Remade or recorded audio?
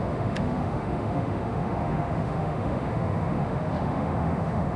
remade